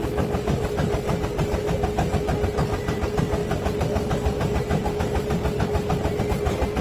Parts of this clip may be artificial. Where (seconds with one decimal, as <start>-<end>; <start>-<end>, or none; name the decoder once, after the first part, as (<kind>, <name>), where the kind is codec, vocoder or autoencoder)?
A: none